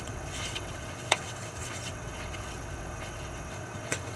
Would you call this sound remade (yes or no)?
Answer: yes